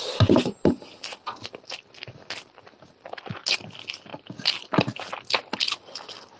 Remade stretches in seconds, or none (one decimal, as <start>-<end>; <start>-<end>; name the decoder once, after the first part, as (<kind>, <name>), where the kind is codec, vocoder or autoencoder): none